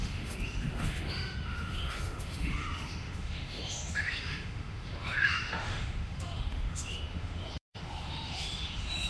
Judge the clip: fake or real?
fake